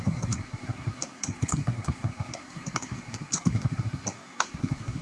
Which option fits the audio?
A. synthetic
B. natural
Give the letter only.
A